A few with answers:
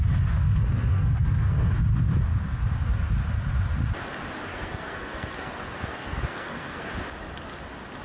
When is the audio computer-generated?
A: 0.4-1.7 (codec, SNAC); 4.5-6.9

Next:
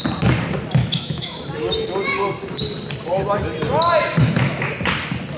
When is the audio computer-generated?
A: 0.8-1.4 (autoencoder, DAC-VAE); 4.2-4.7

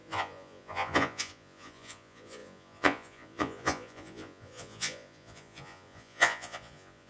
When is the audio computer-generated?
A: 0.0-7.1 (vocoder, Vocos)

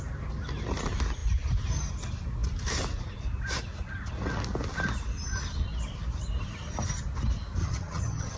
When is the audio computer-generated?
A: 7.6-8.4 (vocoder, HiFi-GAN)

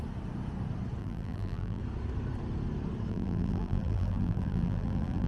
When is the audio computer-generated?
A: 1.0-1.8 (vocoder, BigVGAN v2); 3.1-5.3